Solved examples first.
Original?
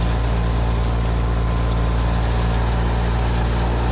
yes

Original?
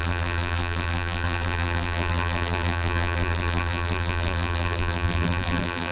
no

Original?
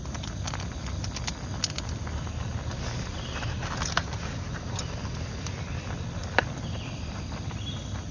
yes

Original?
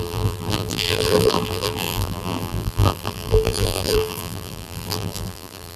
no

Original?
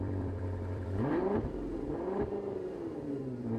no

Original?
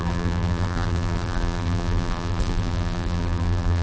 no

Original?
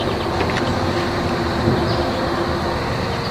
yes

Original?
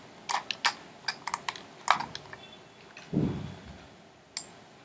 yes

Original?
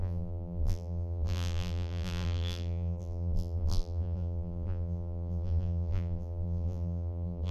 no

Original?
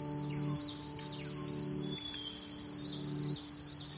yes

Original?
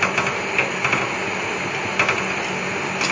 yes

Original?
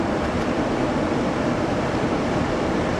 no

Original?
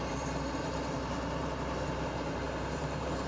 no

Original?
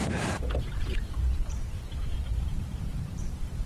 no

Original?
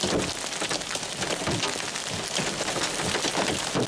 yes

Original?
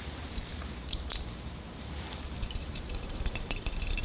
no